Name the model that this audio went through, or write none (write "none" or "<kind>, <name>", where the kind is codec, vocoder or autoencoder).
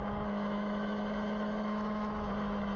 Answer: autoencoder, DAC-VAE